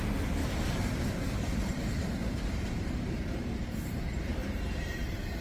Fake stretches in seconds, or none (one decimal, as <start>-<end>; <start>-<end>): 0.4-3.6; 4.4-5.0